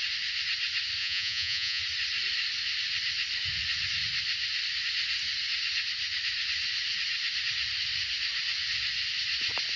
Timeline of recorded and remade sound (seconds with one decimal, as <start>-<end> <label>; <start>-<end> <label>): 0.0-1.0 recorded; 1.0-1.8 remade; 1.8-9.8 recorded